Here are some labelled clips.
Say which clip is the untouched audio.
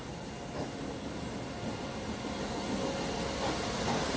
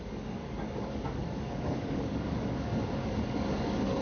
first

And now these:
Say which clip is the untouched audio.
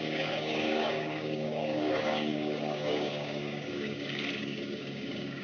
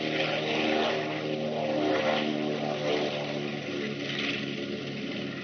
second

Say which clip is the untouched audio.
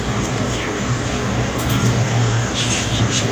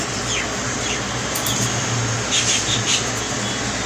second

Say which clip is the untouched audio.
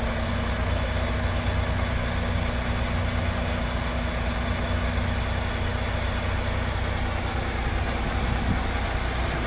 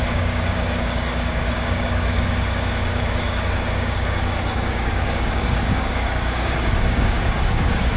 first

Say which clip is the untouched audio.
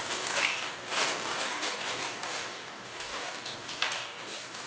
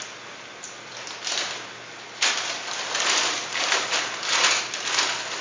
second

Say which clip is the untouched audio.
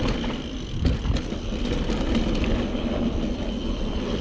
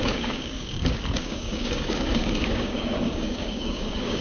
first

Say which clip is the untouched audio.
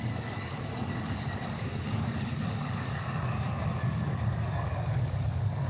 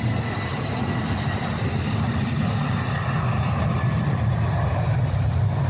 second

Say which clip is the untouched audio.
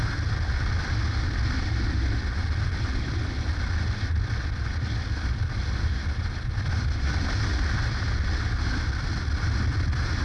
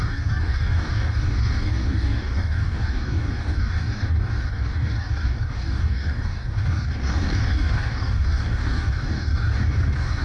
first